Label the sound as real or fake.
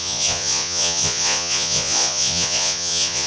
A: fake